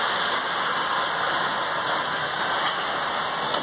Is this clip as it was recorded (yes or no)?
yes